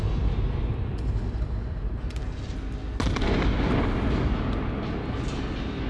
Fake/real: real